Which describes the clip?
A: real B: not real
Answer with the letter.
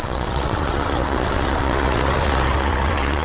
B